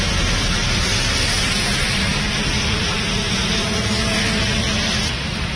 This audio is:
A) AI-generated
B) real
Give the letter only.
B